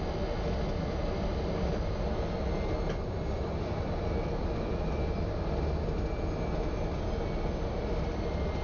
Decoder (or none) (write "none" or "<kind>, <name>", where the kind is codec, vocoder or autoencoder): none